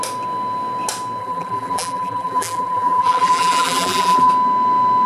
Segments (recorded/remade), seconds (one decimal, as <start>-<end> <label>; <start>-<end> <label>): 0.0-1.2 recorded; 1.2-4.3 remade; 4.3-5.1 recorded